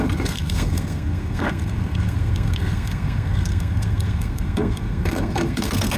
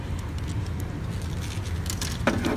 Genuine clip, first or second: second